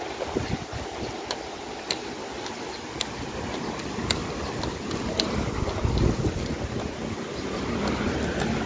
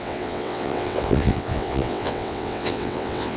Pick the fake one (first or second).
second